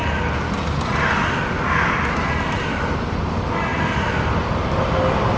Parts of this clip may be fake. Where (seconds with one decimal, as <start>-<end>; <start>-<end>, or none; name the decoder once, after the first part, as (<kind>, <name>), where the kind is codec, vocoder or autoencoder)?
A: 3.7-4.4 (vocoder, BigVGAN v2)